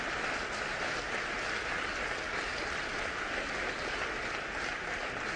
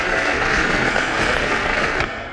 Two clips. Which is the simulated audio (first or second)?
second